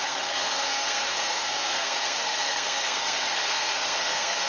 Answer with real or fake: fake